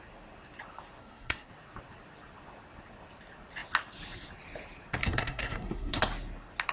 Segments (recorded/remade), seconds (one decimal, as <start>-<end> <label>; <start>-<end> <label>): 0.0-1.0 recorded; 1.0-1.5 remade; 1.5-5.0 recorded; 5.0-6.0 remade; 6.0-6.7 recorded